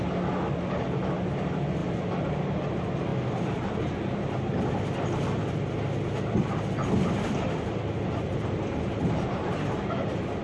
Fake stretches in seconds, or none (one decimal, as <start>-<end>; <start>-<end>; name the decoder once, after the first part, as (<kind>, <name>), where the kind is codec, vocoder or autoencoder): 1.8-2.7 (vocoder, BigVGAN v2); 8.3-10.0